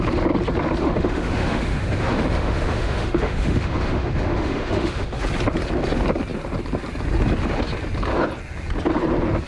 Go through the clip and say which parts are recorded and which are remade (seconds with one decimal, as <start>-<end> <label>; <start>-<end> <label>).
0.0-0.8 recorded; 0.8-5.2 remade; 5.2-9.5 recorded